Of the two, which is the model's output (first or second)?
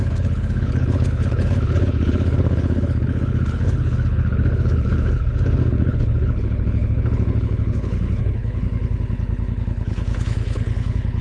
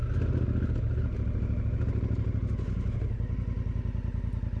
first